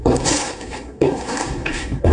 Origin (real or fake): fake